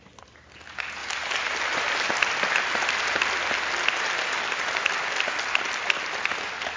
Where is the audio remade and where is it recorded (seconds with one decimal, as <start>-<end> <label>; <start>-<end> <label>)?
0.0-6.8 recorded